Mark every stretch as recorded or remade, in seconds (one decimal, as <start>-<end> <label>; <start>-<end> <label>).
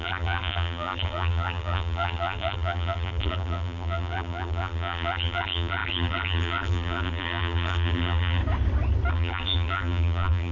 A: 0.0-8.4 remade; 8.4-9.1 recorded; 9.1-10.5 remade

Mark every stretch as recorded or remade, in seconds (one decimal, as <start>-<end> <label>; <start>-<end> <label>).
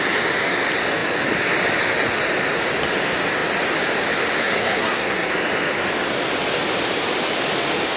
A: 0.0-4.4 recorded; 4.4-5.3 remade; 5.3-8.0 recorded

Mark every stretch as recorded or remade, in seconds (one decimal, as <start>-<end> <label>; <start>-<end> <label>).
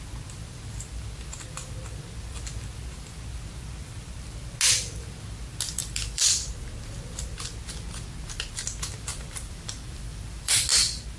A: 0.0-5.8 recorded; 5.8-6.5 remade; 6.5-9.1 recorded; 9.1-10.7 remade; 10.7-11.2 recorded